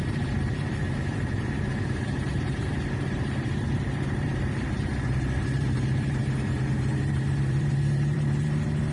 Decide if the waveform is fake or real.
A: fake